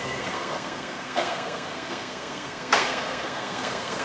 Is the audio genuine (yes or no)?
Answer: no